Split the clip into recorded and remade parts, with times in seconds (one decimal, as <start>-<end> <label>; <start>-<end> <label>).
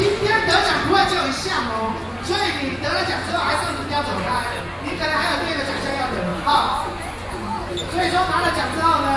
0.0-4.1 recorded; 4.1-4.6 remade; 4.6-6.3 recorded; 6.3-7.7 remade; 7.7-9.2 recorded